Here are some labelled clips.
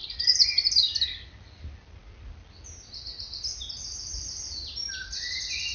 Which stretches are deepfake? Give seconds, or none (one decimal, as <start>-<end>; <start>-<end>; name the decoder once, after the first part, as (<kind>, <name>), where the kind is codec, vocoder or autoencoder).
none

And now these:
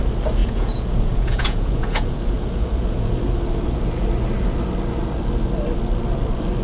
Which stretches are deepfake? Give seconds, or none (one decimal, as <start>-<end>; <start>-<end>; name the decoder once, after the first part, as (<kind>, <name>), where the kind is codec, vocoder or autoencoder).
0.4-3.2 (vocoder, Vocos)

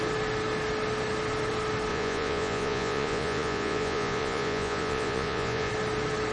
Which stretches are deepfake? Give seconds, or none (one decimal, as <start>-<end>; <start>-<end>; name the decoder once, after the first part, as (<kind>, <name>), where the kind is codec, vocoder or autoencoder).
1.9-5.7 (vocoder, Vocos)

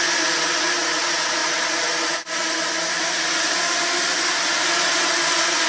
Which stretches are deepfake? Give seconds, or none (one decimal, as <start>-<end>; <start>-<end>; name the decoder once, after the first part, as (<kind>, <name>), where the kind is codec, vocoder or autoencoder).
none